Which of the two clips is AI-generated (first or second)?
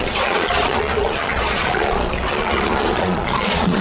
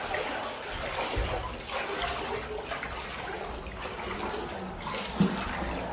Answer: first